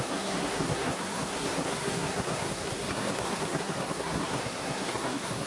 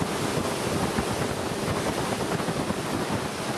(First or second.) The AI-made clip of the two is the first